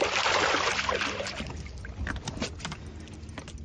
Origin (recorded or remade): recorded